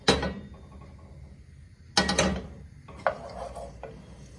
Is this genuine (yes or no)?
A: yes